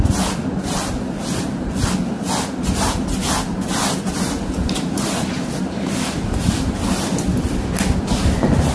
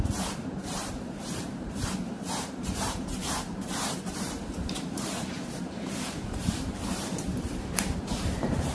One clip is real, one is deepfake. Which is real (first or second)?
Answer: first